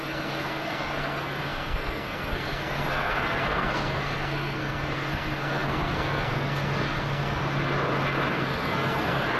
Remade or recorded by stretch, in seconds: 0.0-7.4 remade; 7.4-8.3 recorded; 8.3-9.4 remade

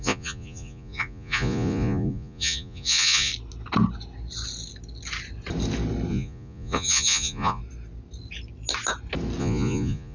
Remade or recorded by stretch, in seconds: 0.0-3.3 remade; 3.3-6.1 recorded; 6.1-7.6 remade; 7.6-9.4 recorded; 9.4-10.1 remade